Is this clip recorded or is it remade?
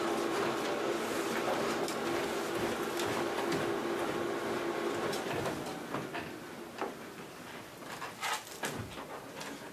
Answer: recorded